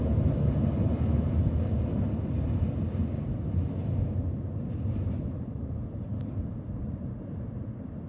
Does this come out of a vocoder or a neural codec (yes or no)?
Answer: yes